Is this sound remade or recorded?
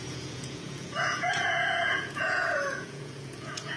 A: remade